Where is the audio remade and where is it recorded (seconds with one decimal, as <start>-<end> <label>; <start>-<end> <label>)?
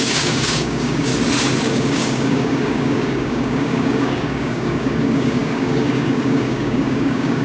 0.0-1.1 remade; 1.1-1.6 recorded; 1.6-7.4 remade